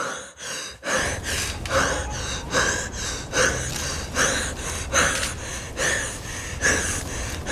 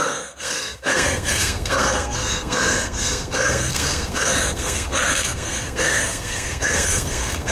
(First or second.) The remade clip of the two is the second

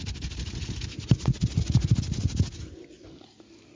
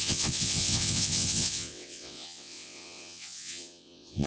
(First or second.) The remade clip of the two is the second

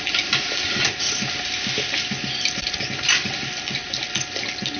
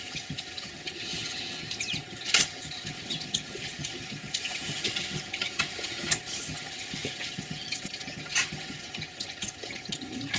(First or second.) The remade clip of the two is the second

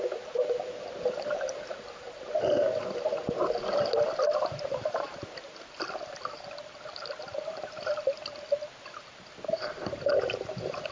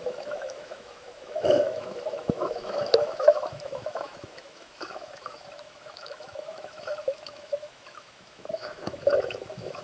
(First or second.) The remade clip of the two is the second